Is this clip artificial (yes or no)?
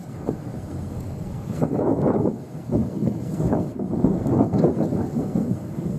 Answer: yes